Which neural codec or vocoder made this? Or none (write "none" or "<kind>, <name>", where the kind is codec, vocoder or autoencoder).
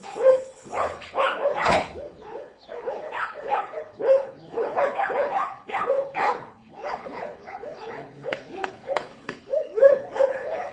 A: codec, HILCodec